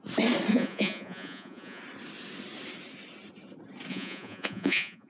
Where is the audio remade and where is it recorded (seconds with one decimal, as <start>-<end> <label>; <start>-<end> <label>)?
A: 0.0-0.5 recorded; 0.5-1.8 remade; 1.8-3.9 recorded; 3.9-5.1 remade